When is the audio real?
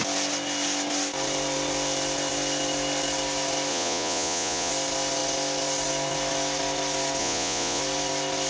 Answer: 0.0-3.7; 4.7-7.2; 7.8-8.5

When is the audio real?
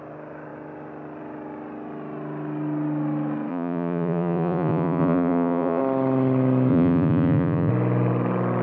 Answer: 0.0-3.5; 5.8-6.7; 7.7-8.6